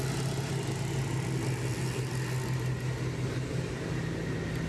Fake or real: real